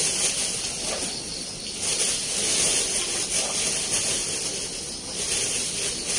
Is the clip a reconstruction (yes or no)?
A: no